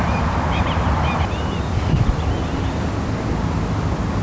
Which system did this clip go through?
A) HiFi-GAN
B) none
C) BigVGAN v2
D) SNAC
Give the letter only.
B